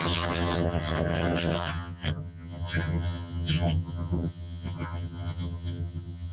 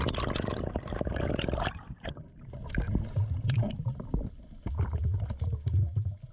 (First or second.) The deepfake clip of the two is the first